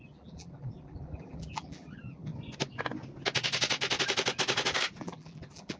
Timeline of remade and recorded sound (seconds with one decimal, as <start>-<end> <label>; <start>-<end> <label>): 0.0-2.3 remade; 2.3-5.0 recorded; 5.0-5.8 remade